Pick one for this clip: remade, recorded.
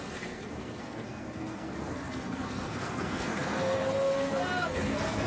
remade